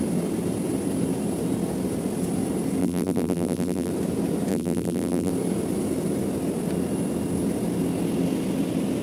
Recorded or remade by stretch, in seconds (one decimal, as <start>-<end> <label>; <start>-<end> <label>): 0.0-2.8 recorded; 2.8-3.9 remade; 3.9-4.5 recorded; 4.5-5.3 remade; 5.3-9.0 recorded